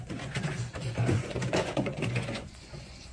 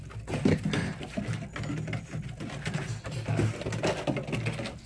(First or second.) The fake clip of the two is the first